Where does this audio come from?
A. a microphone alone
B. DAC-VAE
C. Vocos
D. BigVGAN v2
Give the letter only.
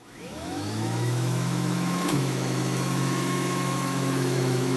B